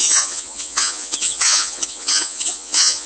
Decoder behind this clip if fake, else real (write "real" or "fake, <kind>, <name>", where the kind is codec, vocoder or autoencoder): fake, vocoder, Vocos